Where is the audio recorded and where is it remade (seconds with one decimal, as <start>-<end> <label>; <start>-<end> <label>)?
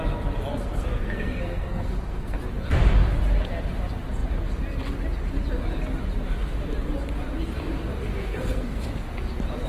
0.0-0.5 recorded; 0.5-2.4 remade; 2.4-8.1 recorded; 8.1-8.9 remade; 8.9-9.7 recorded